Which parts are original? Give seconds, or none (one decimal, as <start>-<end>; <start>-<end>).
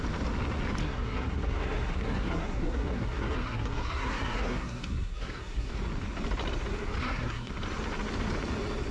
0.0-0.8; 5.7-7.0; 7.5-8.9